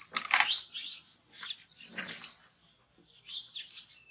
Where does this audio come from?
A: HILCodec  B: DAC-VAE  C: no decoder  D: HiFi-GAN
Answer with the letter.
C